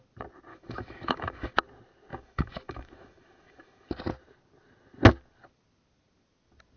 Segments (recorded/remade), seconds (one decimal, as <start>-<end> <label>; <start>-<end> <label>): 0.0-0.5 recorded; 0.5-1.5 remade; 1.5-2.1 recorded; 2.1-3.9 remade; 3.9-6.8 recorded